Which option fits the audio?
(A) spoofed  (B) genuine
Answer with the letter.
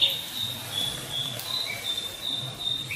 B